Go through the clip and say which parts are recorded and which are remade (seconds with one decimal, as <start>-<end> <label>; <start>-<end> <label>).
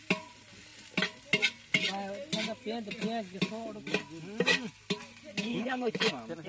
0.0-5.5 recorded; 5.5-6.1 remade; 6.1-6.5 recorded